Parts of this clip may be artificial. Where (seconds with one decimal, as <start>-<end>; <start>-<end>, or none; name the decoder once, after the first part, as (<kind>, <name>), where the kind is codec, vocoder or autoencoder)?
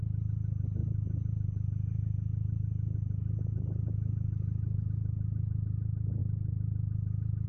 none